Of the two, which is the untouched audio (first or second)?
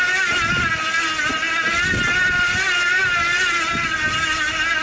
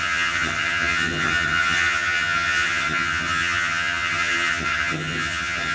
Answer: first